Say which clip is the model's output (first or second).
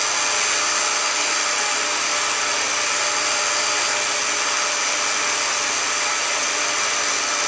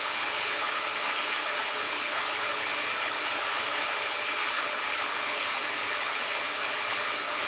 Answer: second